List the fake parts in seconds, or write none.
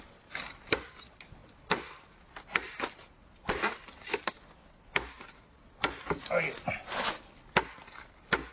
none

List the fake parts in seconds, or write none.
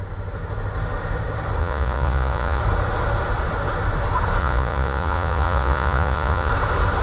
1.6-2.6 (vocoder, Vocos); 4.4-6.5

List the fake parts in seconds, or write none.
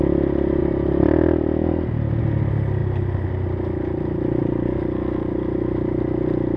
none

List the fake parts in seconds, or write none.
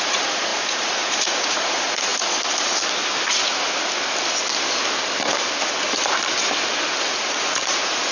0.0-2.1 (vocoder, Vocos); 7.0-8.1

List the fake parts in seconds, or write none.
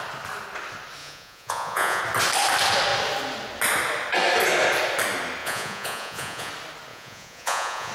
1.0-2.0 (vocoder, Vocos); 5.4-6.5; 6.9-7.9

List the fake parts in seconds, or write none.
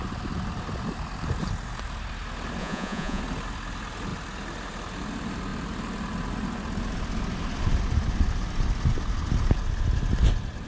2.6-3.2 (vocoder, Vocos)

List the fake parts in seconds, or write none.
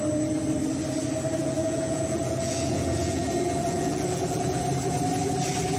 1.4-4.6 (vocoder, Vocos)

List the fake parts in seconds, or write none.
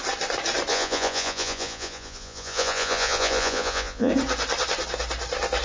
0.7-4.1 (vocoder, Vocos)